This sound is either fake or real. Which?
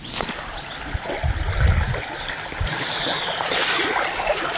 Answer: real